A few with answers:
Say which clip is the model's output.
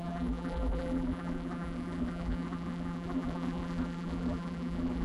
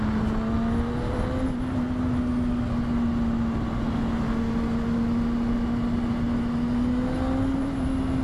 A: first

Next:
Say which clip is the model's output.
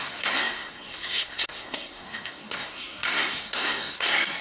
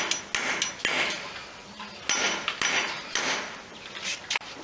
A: first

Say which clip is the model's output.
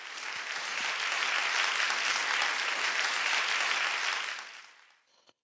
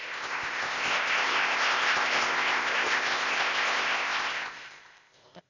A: second